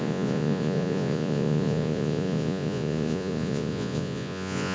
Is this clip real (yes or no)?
no